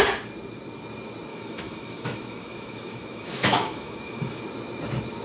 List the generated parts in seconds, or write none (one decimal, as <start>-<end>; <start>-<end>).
1.3-4.4